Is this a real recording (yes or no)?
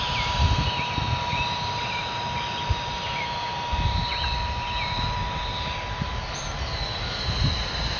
yes